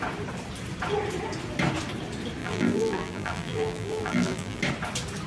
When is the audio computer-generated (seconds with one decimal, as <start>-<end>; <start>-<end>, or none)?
2.4-4.6